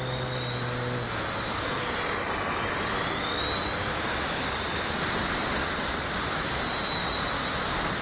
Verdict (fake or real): real